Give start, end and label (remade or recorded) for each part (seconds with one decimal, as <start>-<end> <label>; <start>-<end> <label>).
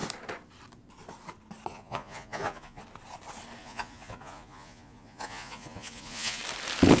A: 0.0-1.7 recorded; 1.7-2.8 remade; 2.8-3.6 recorded; 3.6-6.4 remade; 6.4-7.0 recorded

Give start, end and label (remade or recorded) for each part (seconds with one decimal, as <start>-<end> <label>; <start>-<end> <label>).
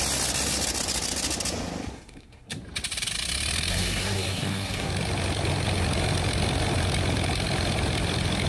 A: 0.0-1.9 recorded; 1.9-2.6 remade; 2.6-3.7 recorded; 3.7-4.9 remade; 4.9-8.5 recorded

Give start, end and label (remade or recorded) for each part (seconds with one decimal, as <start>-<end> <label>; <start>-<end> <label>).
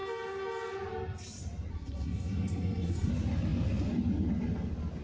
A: 0.0-1.7 recorded; 1.7-3.1 remade; 3.1-5.0 recorded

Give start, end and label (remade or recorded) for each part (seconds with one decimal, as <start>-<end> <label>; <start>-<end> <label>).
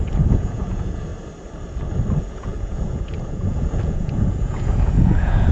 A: 0.0-1.1 remade; 1.1-2.2 recorded; 2.2-5.5 remade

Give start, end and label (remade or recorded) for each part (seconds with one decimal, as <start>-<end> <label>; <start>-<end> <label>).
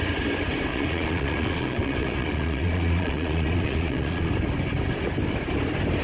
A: 0.0-0.7 recorded; 0.7-4.3 remade; 4.3-6.0 recorded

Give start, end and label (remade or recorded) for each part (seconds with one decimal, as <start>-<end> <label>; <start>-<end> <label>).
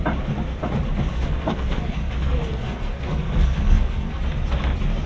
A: 0.0-1.1 recorded; 1.1-4.2 remade; 4.2-5.1 recorded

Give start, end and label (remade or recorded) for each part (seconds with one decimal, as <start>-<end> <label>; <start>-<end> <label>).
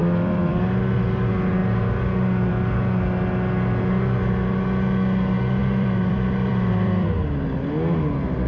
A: 0.0-0.6 remade; 0.6-5.6 recorded; 5.6-7.1 remade; 7.1-8.5 recorded